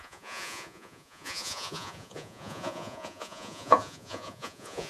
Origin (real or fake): fake